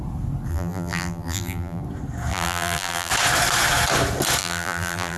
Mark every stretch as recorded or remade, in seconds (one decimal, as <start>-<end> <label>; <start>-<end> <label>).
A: 0.0-0.5 recorded; 0.5-1.8 remade; 1.8-2.3 recorded; 2.3-3.1 remade; 3.1-4.4 recorded; 4.4-5.2 remade